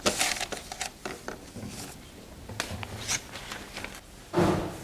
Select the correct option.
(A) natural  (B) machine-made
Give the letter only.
A